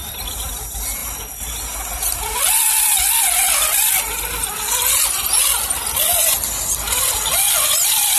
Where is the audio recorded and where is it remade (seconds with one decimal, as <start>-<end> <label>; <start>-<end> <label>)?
0.0-8.2 recorded